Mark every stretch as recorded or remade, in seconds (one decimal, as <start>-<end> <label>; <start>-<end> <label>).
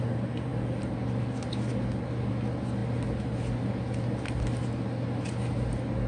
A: 0.0-6.1 recorded